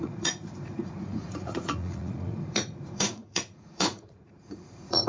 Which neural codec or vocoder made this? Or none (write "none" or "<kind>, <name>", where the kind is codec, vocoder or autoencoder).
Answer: vocoder, Vocos